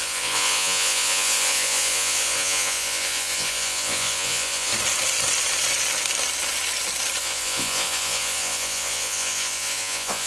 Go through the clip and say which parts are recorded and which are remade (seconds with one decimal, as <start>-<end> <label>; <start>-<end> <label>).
0.0-4.7 remade; 4.7-7.2 recorded; 7.2-10.3 remade